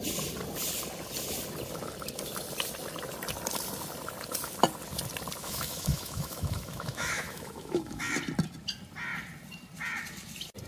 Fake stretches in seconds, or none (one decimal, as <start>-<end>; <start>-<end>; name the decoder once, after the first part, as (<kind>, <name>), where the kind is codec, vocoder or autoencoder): 5.4-8.0 (autoencoder, DAC-VAE)